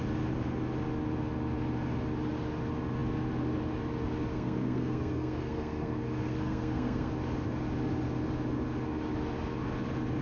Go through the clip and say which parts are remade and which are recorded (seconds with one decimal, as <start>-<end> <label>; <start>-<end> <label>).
0.0-4.3 recorded; 4.3-7.1 remade; 7.1-10.2 recorded